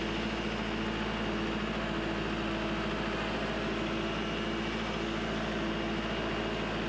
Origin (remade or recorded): recorded